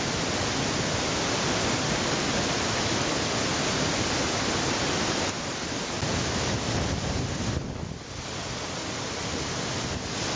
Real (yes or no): yes